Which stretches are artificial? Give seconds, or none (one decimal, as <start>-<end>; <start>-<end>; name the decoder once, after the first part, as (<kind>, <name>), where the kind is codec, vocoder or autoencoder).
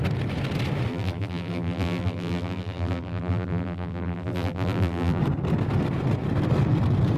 0.9-5.2 (vocoder, BigVGAN v2)